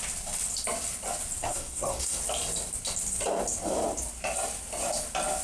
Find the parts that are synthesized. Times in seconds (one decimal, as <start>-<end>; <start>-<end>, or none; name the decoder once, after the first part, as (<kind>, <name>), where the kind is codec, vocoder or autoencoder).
1.4-2.2 (codec, SNAC)